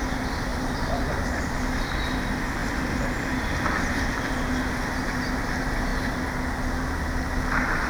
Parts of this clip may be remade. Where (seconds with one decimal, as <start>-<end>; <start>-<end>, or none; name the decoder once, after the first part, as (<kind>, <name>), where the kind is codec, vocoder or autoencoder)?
0.5-1.0 (vocoder, BigVGAN v2); 2.6-4.7